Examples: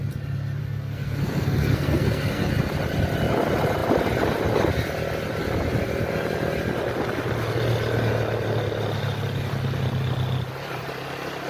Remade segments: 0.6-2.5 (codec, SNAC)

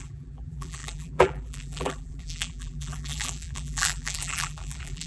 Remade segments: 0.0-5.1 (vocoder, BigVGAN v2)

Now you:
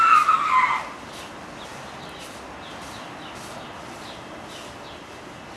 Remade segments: none

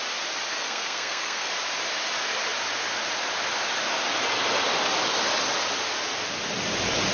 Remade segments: 0.5-1.5 (codec, SNAC)

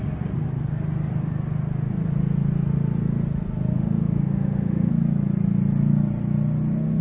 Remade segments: 3.7-4.9 (autoencoder, DAC-VAE)

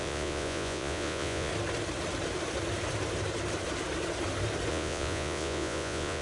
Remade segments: 0.0-1.5 (vocoder, Vocos); 4.7-6.2

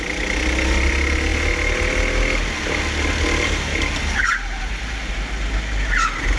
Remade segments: none